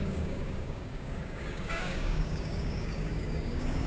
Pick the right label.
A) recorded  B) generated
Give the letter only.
B